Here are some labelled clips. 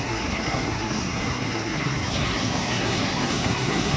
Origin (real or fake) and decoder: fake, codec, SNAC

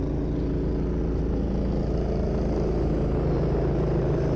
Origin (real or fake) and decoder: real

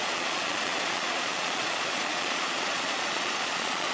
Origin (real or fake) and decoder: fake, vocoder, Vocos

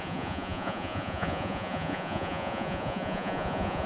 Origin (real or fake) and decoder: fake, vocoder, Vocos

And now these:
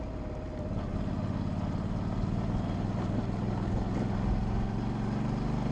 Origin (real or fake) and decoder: real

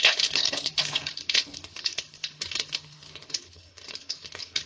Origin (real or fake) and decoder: fake, codec, HILCodec